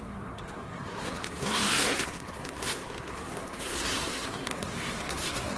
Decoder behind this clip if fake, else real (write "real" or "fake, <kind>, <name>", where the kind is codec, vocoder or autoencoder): fake, codec, SNAC